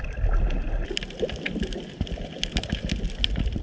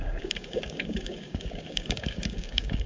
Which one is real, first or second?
first